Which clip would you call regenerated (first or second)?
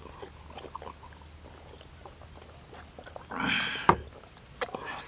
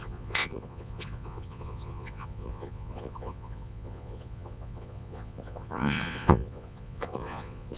second